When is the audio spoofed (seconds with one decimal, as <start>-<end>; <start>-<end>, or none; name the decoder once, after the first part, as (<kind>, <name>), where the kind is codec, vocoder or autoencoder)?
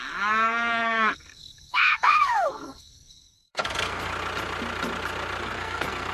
0.0-4.1 (codec, SNAC); 5.4-6.1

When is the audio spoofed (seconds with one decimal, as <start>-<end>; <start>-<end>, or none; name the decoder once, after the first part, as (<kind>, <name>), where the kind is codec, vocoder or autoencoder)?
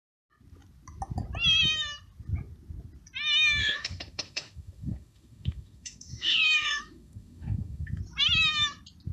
3.6-8.0 (autoencoder, DAC-VAE)